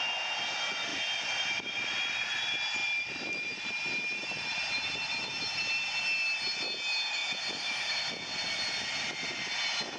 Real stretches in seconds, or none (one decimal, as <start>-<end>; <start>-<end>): 0.0-0.9; 1.9-2.8; 6.0-7.2; 8.1-10.0